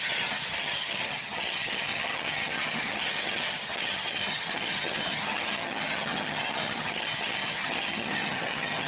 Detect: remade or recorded remade